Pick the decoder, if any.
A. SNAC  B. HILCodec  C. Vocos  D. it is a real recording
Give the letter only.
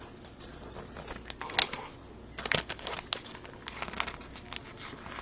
D